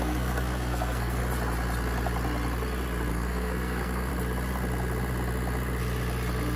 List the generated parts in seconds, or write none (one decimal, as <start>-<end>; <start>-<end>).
0.0-1.2; 3.1-4.1